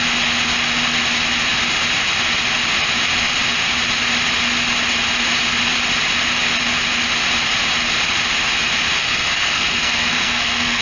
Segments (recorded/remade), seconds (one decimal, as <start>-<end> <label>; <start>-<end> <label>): 0.0-9.0 recorded; 9.0-10.8 remade